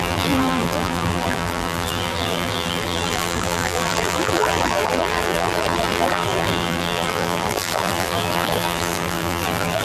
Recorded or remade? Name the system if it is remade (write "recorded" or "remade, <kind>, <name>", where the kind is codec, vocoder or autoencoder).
remade, vocoder, BigVGAN v2